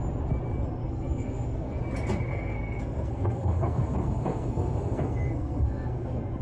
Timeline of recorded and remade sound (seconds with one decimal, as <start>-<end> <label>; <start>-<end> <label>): 0.0-0.8 recorded; 0.8-1.8 remade; 1.8-2.3 recorded; 2.3-6.4 remade